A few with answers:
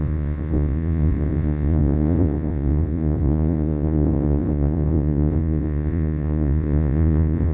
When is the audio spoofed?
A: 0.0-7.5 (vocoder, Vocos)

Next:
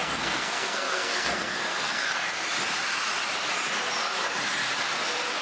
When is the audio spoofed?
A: 0.0-2.3 (codec, SNAC)